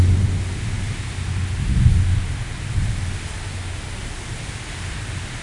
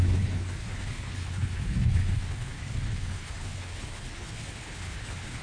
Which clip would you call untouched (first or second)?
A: first